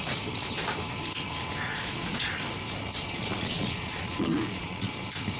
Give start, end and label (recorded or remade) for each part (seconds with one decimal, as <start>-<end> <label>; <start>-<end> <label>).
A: 0.0-1.7 recorded; 1.7-2.3 remade; 2.3-3.0 recorded; 3.0-5.0 remade; 5.0-5.4 recorded